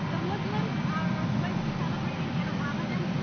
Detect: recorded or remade recorded